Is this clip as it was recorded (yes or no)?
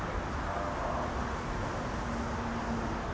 yes